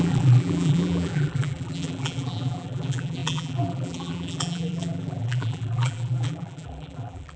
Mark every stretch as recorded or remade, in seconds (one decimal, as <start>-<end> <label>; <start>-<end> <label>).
0.0-7.4 remade